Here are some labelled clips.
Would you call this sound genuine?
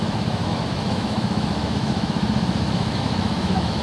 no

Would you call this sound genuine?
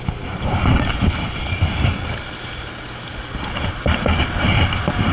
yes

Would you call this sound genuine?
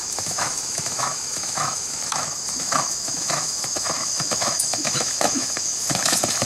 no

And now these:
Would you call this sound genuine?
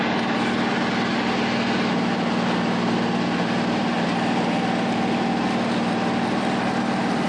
yes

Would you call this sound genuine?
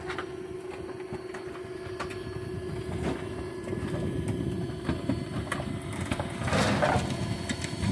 yes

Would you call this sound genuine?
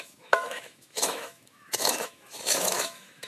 no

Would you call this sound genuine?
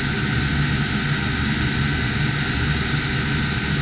yes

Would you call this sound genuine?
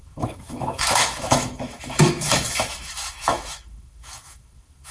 no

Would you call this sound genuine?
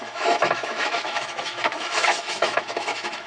no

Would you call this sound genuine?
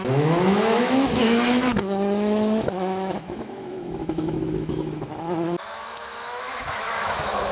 no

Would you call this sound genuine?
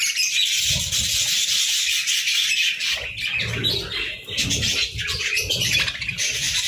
yes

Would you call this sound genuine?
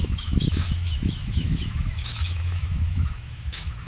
no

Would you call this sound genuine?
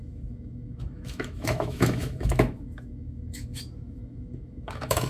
no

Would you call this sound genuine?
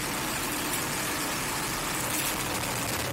yes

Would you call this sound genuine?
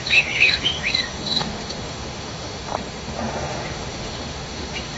no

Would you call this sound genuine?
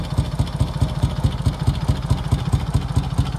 yes